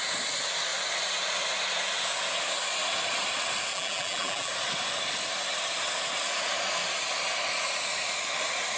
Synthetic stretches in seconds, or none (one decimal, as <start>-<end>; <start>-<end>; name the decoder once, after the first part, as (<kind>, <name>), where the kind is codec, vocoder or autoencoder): 3.7-4.5 (vocoder, BigVGAN v2)